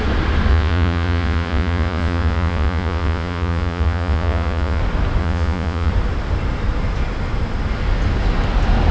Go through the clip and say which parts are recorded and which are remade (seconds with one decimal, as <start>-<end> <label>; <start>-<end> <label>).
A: 0.0-0.5 recorded; 0.5-4.8 remade; 4.8-5.2 recorded; 5.2-5.9 remade; 5.9-8.9 recorded